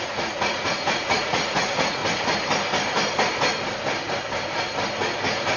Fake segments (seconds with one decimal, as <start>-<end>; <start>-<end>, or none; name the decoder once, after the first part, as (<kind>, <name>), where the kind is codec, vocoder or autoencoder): 0.0-2.0 (vocoder, Vocos)